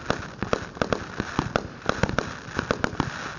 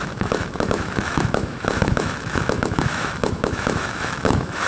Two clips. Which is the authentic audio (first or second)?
first